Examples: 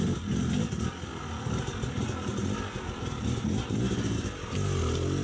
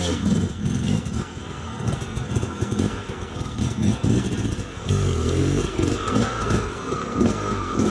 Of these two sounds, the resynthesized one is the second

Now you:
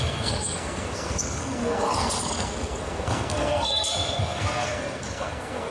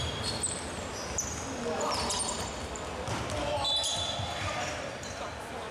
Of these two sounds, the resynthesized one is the first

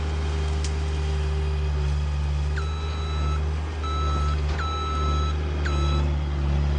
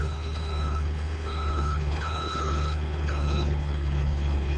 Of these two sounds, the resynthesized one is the second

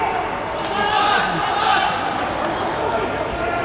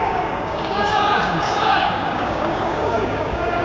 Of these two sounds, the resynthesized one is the second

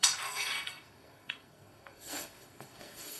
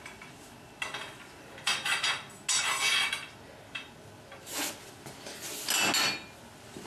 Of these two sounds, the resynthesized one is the first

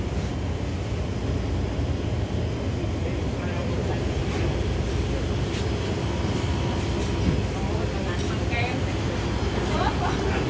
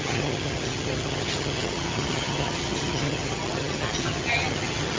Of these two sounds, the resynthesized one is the second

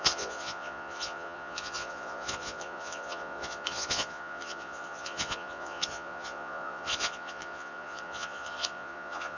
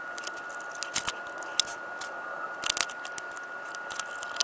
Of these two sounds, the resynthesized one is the first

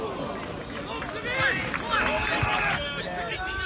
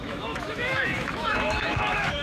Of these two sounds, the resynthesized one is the second